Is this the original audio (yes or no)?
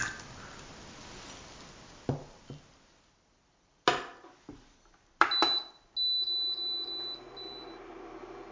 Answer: yes